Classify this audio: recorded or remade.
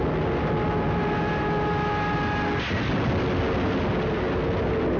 recorded